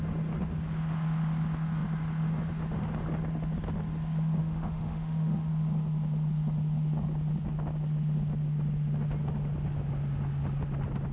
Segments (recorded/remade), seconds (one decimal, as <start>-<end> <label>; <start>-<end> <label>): 0.0-4.4 recorded; 4.4-5.5 remade; 5.5-11.1 recorded